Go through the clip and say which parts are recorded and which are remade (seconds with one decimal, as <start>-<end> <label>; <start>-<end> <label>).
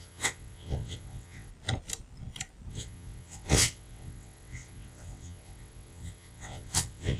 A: 0.0-1.5 remade; 1.5-2.7 recorded; 2.7-7.2 remade